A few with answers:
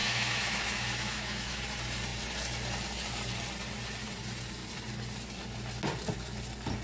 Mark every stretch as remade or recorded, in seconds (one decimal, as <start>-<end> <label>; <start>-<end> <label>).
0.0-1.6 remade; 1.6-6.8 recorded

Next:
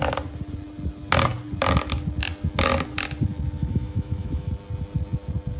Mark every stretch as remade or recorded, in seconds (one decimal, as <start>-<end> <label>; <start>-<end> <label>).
0.0-3.6 recorded; 3.6-4.5 remade; 4.5-5.6 recorded

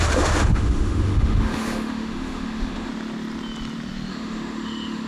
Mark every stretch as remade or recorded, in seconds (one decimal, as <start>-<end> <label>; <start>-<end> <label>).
0.0-2.9 remade; 2.9-4.1 recorded; 4.1-5.1 remade

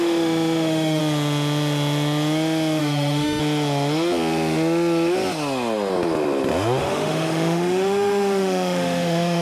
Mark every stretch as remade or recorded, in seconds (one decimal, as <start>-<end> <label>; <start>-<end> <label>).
0.0-1.0 remade; 1.0-2.8 recorded; 2.8-3.4 remade; 3.4-6.8 recorded; 6.8-9.4 remade

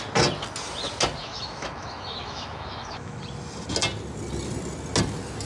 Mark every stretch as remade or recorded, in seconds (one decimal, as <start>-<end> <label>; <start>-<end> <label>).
0.0-1.2 recorded; 1.2-3.2 remade; 3.2-5.5 recorded

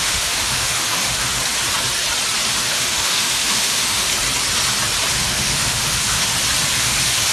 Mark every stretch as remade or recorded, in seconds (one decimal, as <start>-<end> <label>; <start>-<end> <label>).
0.0-1.4 remade; 1.4-2.5 recorded; 2.5-4.1 remade; 4.1-5.1 recorded; 5.1-6.3 remade; 6.3-6.8 recorded; 6.8-7.3 remade